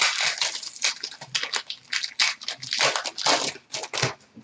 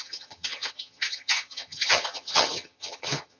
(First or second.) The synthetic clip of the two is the second